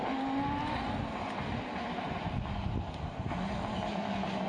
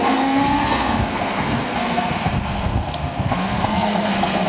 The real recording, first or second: first